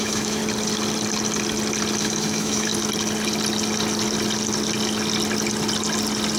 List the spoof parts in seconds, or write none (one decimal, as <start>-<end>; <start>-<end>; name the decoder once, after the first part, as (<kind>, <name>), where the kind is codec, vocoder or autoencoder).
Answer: 0.0-0.4 (autoencoder, DAC-VAE); 2.0-2.7